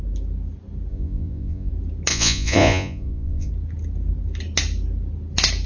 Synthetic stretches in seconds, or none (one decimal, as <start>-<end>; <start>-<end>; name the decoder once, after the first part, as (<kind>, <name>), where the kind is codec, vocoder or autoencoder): 0.9-1.7 (vocoder, Vocos); 2.1-3.5